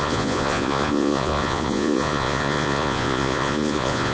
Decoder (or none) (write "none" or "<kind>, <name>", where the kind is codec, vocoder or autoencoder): vocoder, Vocos